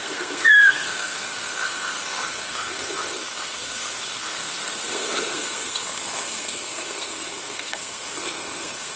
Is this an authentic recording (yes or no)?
no